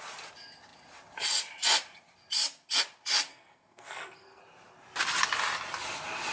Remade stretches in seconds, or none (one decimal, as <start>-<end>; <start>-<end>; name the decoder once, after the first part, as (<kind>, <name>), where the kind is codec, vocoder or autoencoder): 3.3-4.4 (codec, SNAC)